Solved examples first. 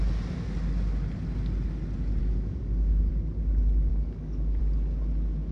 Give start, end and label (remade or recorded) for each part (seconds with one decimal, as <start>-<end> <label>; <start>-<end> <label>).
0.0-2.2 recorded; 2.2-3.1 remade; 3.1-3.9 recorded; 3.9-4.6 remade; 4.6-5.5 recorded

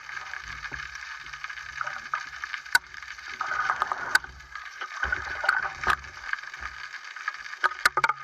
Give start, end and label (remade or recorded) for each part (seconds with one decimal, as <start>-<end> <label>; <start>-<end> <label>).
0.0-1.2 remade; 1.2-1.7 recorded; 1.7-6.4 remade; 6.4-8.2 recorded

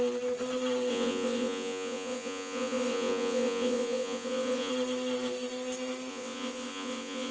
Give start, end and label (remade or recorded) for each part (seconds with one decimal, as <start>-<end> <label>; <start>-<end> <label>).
0.0-0.9 recorded; 0.9-4.7 remade; 4.7-6.1 recorded; 6.1-7.3 remade

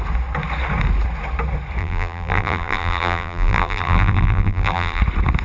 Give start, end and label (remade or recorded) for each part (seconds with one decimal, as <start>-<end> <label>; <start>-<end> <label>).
0.0-1.8 recorded; 1.8-5.0 remade; 5.0-5.4 recorded

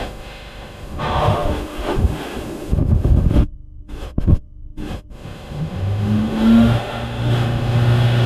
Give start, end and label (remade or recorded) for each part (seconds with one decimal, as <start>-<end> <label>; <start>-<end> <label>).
0.0-8.3 remade

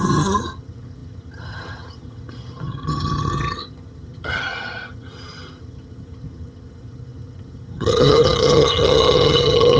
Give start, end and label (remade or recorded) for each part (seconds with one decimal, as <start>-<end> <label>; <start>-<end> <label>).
0.0-9.8 remade